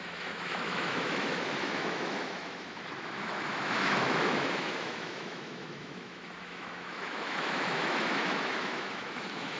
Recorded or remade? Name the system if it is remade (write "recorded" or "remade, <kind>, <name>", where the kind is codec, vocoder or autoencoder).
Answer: remade, autoencoder, DAC-VAE